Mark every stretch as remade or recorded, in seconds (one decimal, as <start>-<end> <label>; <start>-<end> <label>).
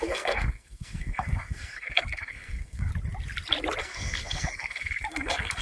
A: 0.0-2.9 remade; 2.9-3.8 recorded; 3.8-5.6 remade